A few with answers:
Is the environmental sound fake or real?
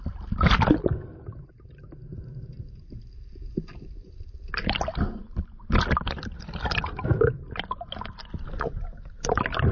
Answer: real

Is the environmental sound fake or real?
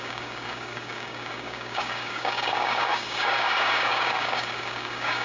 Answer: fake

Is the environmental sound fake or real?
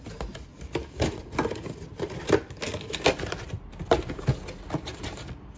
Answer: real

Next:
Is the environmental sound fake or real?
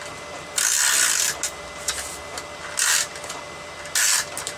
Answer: real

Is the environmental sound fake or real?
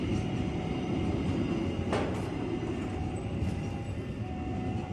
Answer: real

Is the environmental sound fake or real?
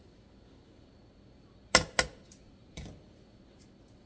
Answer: real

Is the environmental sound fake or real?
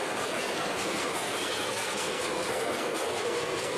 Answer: fake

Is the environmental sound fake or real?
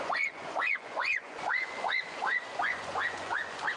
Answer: fake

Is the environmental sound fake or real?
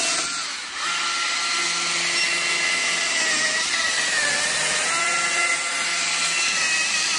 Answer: real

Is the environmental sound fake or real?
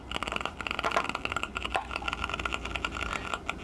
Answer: real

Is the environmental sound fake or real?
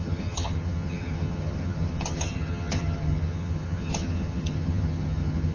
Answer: fake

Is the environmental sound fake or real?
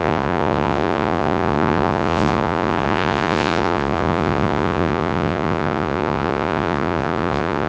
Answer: fake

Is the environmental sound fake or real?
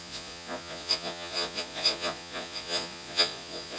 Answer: fake